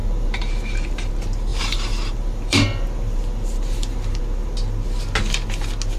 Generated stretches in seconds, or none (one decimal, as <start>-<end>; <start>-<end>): 0.0-1.1; 1.5-4.2